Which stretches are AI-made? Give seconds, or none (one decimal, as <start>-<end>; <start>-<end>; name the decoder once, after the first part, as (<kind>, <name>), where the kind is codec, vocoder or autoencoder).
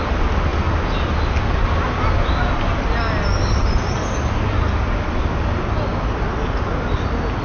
none